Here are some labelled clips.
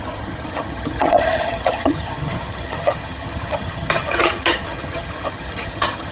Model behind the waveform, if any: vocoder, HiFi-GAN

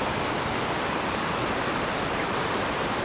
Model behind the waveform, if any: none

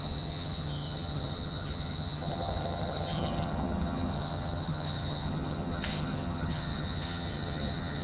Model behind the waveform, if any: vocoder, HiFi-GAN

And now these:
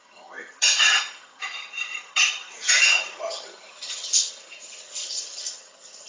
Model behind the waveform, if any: vocoder, HiFi-GAN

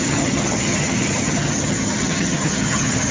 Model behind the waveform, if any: vocoder, HiFi-GAN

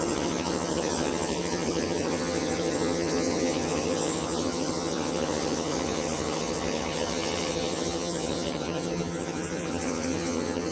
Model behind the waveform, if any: vocoder, HiFi-GAN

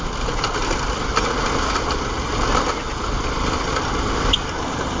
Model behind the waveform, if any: none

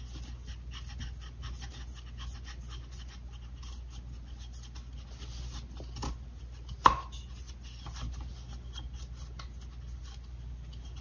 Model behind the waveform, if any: none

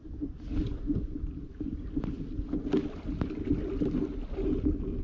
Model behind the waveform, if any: none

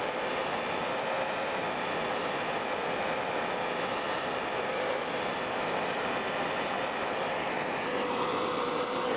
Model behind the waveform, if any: none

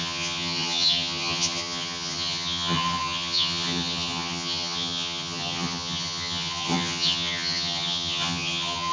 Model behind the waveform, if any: vocoder, HiFi-GAN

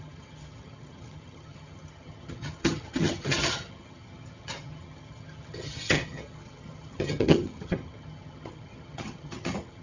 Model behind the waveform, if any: vocoder, HiFi-GAN